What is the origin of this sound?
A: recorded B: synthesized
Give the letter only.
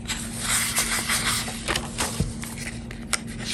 A